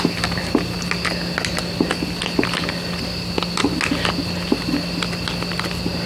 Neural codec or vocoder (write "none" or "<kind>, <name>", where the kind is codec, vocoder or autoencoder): none